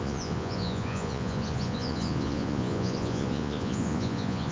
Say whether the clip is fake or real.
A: fake